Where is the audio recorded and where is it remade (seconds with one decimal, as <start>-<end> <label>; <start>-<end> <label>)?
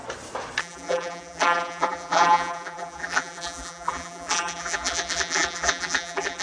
0.0-0.6 recorded; 0.6-6.4 remade